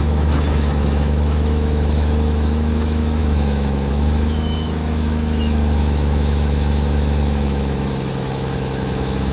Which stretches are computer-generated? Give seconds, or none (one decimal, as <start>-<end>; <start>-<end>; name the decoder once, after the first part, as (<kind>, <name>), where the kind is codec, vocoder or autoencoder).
0.0-9.3 (autoencoder, DAC-VAE)